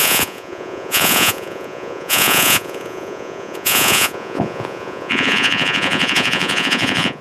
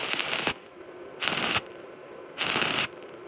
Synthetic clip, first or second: first